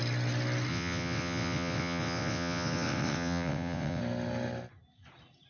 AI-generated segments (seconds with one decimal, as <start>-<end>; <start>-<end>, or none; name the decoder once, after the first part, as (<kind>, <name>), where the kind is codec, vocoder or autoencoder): 0.7-4.0 (vocoder, WaveNeXt)